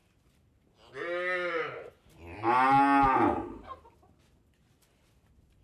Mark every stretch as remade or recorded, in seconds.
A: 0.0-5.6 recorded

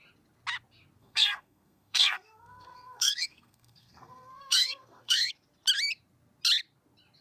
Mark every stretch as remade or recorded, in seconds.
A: 0.0-1.0 recorded; 1.0-5.3 remade; 5.3-7.2 recorded

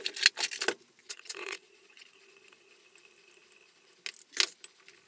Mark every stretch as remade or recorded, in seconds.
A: 0.0-1.0 recorded; 1.0-2.7 remade; 2.7-5.1 recorded

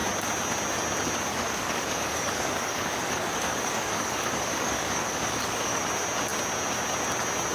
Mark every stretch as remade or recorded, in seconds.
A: 0.0-1.3 recorded; 1.3-5.8 remade; 5.8-7.5 recorded

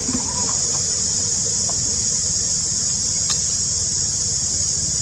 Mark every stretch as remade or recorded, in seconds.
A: 0.0-1.5 remade; 1.5-5.0 recorded

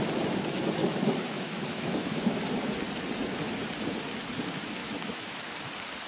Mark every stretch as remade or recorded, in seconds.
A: 0.0-0.8 recorded; 0.8-2.4 remade; 2.4-4.8 recorded; 4.8-5.5 remade; 5.5-6.1 recorded

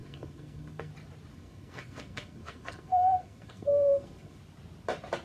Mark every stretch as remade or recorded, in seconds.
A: 0.0-0.9 remade; 0.9-1.3 recorded; 1.3-4.4 remade; 4.4-5.2 recorded